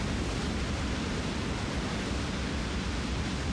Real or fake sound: real